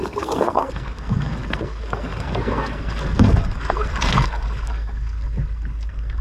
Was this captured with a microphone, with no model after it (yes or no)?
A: no